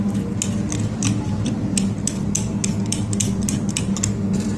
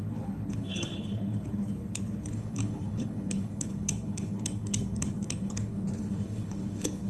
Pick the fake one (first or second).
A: second